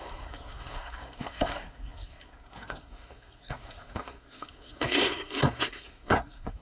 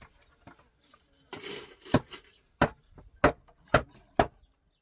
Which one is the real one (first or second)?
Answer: second